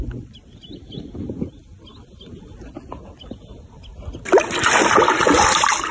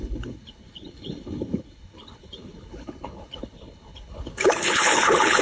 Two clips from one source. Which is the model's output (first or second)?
second